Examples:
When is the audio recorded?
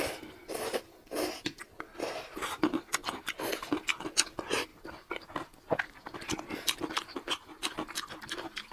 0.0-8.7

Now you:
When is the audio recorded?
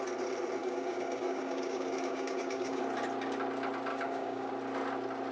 0.0-0.6; 2.8-3.9; 4.5-5.3